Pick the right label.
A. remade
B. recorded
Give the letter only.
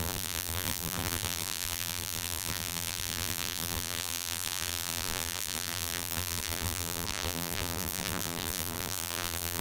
A